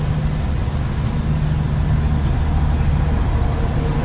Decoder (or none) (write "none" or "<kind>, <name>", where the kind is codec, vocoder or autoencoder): none